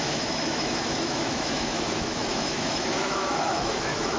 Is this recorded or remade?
remade